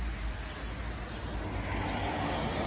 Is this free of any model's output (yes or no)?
yes